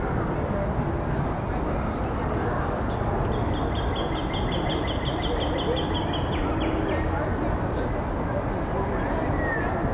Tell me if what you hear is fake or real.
real